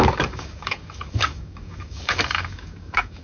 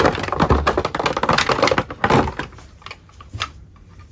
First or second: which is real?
second